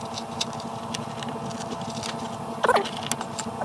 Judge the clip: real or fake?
real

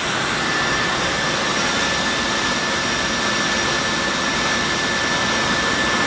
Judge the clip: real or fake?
real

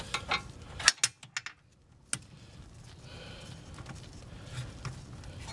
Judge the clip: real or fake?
real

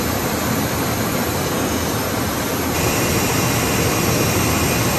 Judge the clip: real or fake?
real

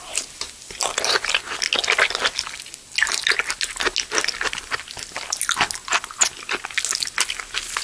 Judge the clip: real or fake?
real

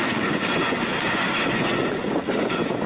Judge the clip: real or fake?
fake